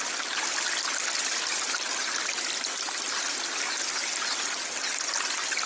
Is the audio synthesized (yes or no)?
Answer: no